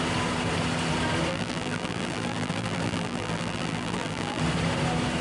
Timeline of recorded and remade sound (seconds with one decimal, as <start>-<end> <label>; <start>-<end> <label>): 0.0-1.3 recorded; 1.3-4.4 remade; 4.4-5.2 recorded